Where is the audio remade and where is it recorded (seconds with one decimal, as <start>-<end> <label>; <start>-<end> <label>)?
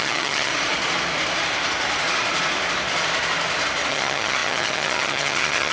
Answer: 0.0-0.5 remade; 0.5-3.9 recorded; 3.9-5.7 remade